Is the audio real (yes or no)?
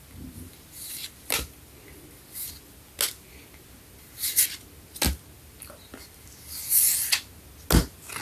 yes